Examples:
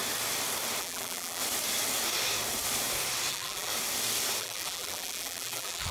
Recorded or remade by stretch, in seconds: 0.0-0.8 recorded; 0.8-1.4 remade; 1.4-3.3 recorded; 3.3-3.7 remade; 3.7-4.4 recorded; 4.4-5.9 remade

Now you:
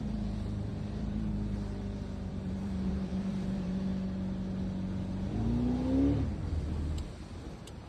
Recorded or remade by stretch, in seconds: 0.0-3.9 remade; 3.9-7.4 recorded; 7.4-7.9 remade